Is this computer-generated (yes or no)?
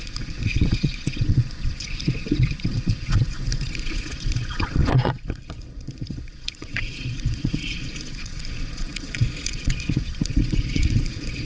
yes